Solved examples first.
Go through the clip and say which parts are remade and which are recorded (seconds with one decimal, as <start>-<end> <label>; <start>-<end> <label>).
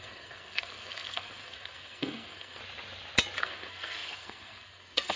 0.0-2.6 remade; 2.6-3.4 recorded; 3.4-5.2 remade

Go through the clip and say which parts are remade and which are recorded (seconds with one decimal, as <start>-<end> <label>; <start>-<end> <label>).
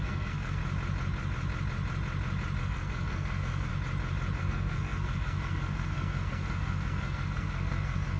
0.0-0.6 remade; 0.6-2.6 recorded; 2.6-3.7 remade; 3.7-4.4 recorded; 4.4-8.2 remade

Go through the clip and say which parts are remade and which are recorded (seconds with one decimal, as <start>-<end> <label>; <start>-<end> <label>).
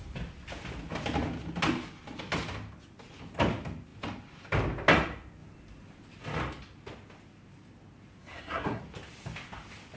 0.0-8.2 recorded; 8.2-8.8 remade; 8.8-10.0 recorded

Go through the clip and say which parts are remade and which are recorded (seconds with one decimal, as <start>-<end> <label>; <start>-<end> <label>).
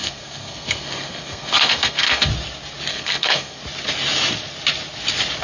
0.0-2.3 remade; 2.3-2.9 recorded; 2.9-3.6 remade; 3.6-5.4 recorded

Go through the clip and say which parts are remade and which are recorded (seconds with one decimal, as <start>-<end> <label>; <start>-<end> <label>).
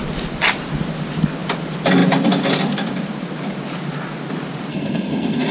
0.0-4.7 recorded; 4.7-5.5 remade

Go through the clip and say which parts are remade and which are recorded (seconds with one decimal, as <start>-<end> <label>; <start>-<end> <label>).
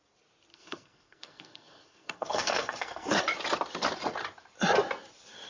0.0-0.5 recorded; 0.5-3.2 remade; 3.2-5.5 recorded